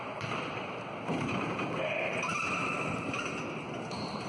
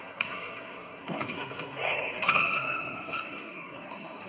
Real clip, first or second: first